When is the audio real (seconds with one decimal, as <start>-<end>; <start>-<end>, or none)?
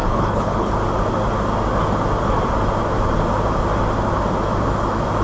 0.7-5.2